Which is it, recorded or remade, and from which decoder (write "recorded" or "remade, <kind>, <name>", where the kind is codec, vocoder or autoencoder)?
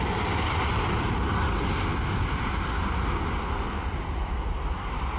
recorded